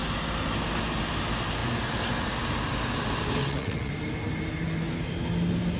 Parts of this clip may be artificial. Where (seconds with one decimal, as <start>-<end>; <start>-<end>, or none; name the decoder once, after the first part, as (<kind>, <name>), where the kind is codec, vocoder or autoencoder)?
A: 3.4-3.9 (vocoder, WaveNeXt)

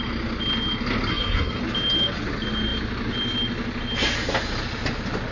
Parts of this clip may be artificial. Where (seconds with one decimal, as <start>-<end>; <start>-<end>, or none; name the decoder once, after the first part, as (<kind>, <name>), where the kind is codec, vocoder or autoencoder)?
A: 1.1-1.6 (codec, SNAC)